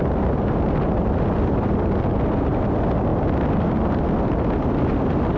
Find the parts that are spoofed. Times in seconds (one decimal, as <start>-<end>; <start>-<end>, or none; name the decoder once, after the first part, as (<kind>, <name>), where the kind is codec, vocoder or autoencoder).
none